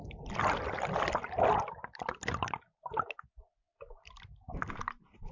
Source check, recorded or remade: recorded